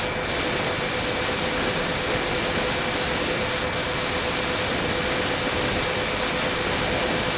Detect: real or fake real